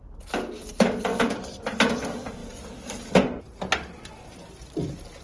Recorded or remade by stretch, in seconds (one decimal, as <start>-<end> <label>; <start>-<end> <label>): 0.0-1.1 recorded; 1.1-1.9 remade; 1.9-2.4 recorded; 2.4-3.4 remade; 3.4-5.2 recorded

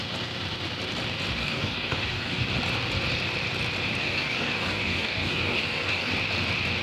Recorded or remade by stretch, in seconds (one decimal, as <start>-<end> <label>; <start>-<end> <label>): 0.0-1.4 recorded; 1.4-2.4 remade; 2.4-4.0 recorded; 4.0-6.1 remade; 6.1-6.8 recorded

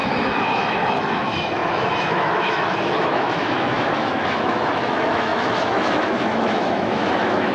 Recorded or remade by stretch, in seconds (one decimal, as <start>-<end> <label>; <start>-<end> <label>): 0.0-7.5 remade

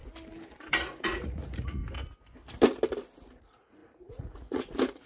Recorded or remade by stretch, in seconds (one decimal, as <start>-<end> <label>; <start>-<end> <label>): 0.0-0.6 recorded; 0.6-1.8 remade; 1.8-3.4 recorded; 3.4-5.1 remade